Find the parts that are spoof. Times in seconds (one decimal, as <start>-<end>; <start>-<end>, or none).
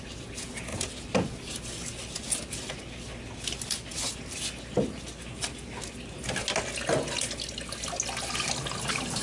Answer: none